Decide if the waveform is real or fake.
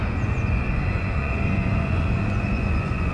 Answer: fake